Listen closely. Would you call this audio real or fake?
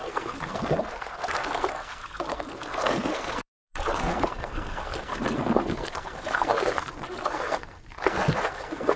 fake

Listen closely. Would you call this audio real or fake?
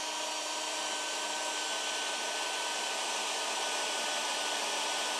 real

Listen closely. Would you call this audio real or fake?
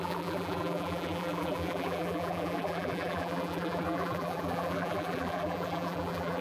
fake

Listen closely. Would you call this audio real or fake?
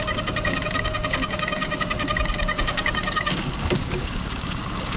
fake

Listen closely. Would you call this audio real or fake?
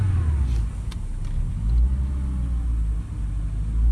real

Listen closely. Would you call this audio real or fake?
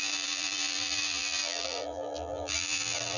fake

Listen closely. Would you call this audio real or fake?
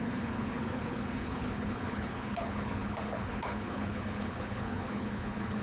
fake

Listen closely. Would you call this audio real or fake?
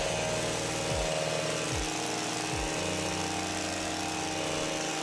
real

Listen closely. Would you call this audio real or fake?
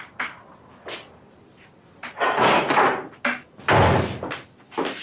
real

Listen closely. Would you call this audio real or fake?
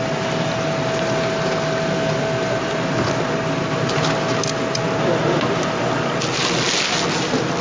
real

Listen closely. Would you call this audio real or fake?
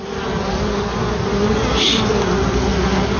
real